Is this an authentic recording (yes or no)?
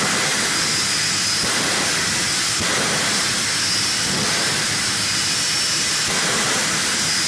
yes